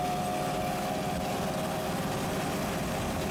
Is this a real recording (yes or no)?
yes